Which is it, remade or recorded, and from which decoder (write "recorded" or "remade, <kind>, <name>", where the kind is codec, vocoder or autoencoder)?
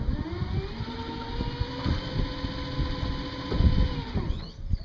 recorded